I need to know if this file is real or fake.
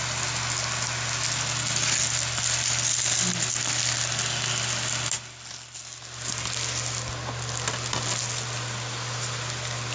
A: real